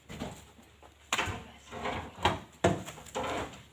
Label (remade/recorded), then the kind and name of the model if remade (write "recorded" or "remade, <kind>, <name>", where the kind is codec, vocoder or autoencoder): recorded